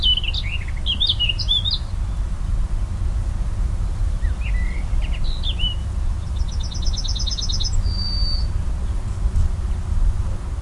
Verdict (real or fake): real